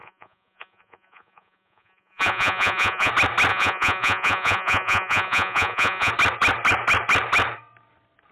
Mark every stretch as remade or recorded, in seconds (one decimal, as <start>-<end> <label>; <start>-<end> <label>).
0.0-3.1 remade; 3.1-3.5 recorded; 3.5-6.1 remade; 6.1-8.3 recorded